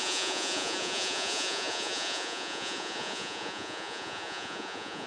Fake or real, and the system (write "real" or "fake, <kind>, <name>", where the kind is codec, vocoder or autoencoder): fake, vocoder, Vocos